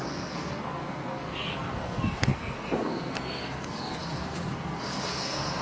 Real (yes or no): no